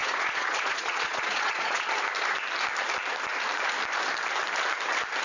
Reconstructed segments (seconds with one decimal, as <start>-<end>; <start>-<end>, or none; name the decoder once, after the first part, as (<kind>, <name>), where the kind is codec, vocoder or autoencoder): 0.0-1.9 (vocoder, Vocos)